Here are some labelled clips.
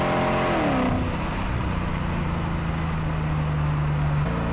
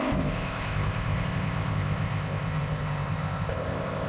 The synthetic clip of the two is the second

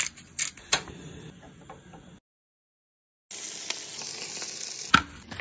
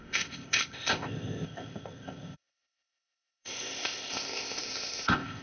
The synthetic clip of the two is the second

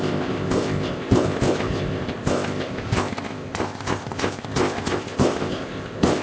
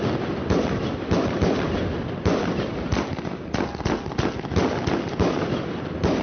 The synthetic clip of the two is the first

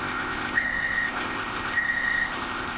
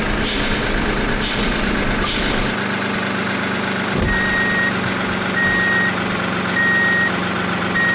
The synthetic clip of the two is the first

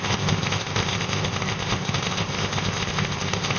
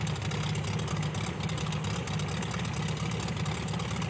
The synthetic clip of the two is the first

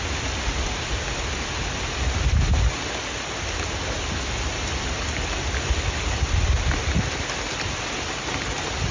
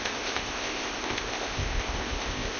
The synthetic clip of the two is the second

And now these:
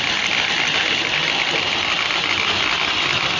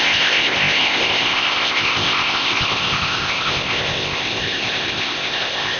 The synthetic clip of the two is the second